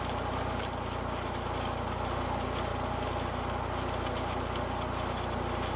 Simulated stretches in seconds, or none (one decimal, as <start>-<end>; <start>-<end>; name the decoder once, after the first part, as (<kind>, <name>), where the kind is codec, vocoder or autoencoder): none